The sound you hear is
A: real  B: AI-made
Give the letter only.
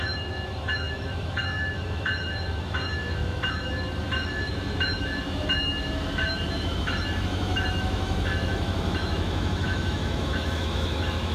B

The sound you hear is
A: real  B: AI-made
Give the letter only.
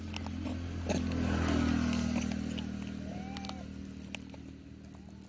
A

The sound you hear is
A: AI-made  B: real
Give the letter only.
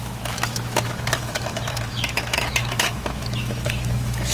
A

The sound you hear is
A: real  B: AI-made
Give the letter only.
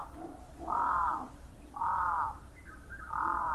B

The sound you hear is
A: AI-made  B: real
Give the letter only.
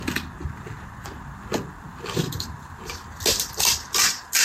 B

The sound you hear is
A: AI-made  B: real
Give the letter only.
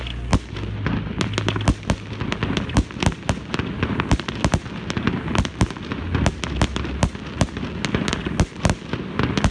B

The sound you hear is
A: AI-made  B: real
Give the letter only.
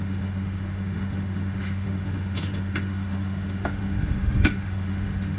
A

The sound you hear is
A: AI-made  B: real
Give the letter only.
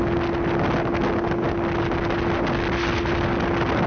B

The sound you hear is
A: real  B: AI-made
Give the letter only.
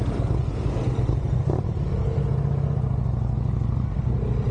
A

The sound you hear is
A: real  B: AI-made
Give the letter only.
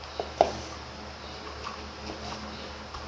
A